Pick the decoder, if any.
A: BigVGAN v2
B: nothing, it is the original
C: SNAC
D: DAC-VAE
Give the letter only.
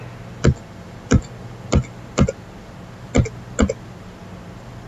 B